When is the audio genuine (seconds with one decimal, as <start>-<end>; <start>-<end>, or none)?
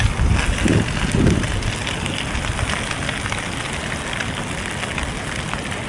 0.0-5.9